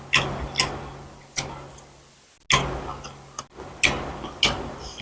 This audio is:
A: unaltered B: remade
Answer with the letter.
A